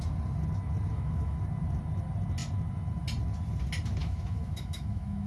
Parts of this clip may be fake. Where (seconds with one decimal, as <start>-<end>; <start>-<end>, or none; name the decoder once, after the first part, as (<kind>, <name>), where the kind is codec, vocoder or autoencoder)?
0.9-1.4 (autoencoder, DAC-VAE); 4.0-5.3